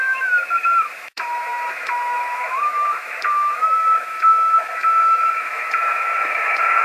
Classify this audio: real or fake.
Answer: fake